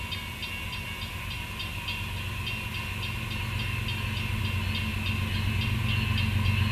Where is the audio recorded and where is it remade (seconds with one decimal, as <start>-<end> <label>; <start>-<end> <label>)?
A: 0.0-6.7 recorded